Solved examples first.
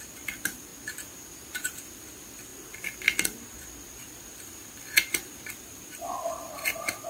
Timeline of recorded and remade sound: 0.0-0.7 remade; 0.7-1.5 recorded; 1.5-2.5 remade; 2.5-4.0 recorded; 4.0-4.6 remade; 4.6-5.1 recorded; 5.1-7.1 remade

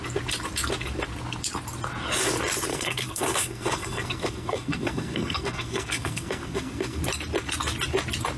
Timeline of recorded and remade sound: 0.0-2.7 recorded; 2.7-7.0 remade; 7.0-8.4 recorded

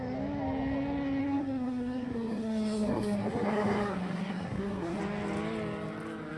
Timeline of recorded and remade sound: 0.0-1.2 recorded; 1.2-5.0 remade; 5.0-6.4 recorded

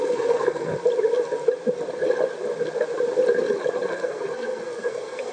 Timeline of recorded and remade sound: 0.0-0.7 remade; 0.7-3.9 recorded; 3.9-5.3 remade

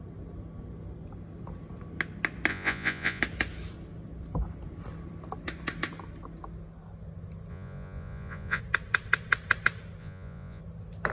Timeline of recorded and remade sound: 0.0-2.5 recorded; 2.5-3.2 remade; 3.2-7.5 recorded; 7.5-8.6 remade; 8.6-10.0 recorded; 10.0-10.6 remade; 10.6-11.1 recorded

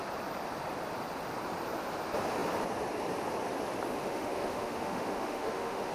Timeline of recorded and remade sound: 0.0-3.9 recorded; 3.9-5.9 remade